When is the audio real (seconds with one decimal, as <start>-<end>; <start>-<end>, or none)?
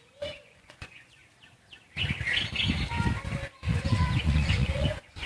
1.2-3.7